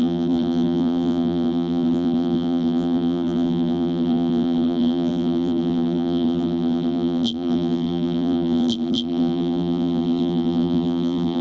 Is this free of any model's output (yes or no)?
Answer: no